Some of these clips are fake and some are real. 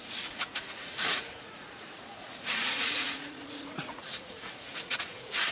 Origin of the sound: fake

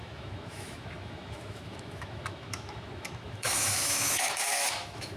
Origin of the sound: fake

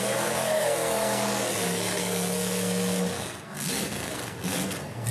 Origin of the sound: fake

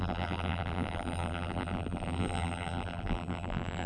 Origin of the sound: fake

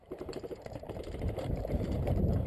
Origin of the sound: fake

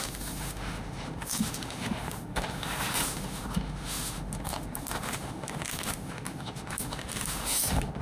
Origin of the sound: fake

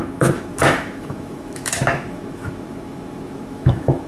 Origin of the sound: fake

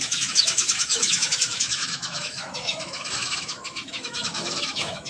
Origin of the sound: fake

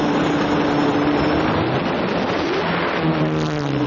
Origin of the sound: real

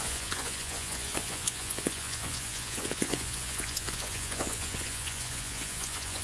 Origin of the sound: fake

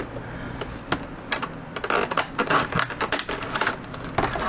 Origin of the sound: real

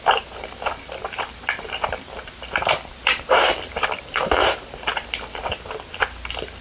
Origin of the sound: fake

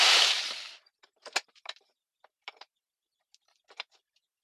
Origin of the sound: fake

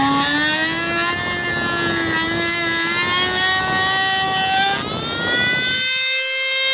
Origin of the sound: real